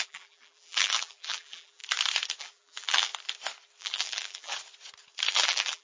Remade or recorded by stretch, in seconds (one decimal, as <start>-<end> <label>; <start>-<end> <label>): 0.0-1.8 remade; 1.8-2.4 recorded; 2.4-3.1 remade; 3.1-3.8 recorded; 3.8-4.5 remade; 4.5-5.3 recorded; 5.3-5.8 remade